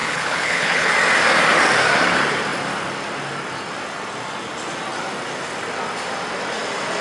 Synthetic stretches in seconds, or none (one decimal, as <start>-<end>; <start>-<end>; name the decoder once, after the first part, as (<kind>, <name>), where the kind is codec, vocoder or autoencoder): 0.0-0.9 (codec, HILCodec)